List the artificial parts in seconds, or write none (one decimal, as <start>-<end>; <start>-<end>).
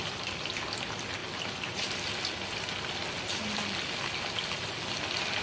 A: none